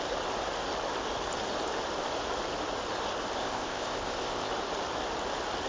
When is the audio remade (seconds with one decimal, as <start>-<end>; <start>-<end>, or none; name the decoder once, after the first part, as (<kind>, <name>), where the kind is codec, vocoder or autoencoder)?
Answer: 3.4-4.5 (codec, ZipCodec)